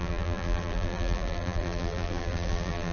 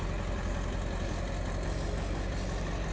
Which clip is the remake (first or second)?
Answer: first